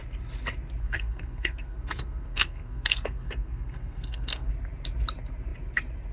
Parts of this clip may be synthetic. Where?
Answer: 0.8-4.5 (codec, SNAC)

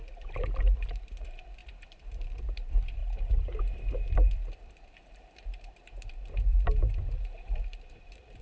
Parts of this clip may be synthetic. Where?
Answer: 0.0-8.4 (vocoder, BigVGAN v2)